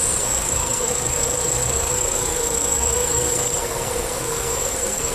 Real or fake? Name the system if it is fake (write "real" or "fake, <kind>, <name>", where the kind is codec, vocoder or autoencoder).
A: fake, codec, SNAC